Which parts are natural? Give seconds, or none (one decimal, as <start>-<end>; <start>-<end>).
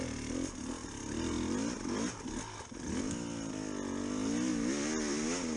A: 0.0-5.6